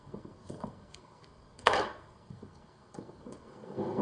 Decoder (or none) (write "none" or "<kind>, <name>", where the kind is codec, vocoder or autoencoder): codec, SNAC